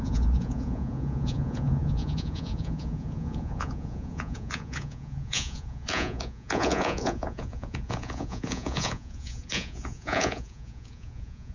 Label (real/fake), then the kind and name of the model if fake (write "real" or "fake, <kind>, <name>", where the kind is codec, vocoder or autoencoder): fake, vocoder, Vocos